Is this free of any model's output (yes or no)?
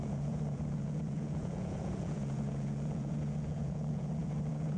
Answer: no